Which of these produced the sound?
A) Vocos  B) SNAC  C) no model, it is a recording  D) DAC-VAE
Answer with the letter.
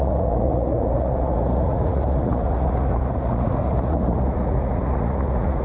A